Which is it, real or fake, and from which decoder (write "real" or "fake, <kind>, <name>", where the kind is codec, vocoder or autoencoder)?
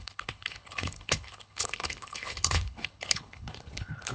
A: fake, codec, HILCodec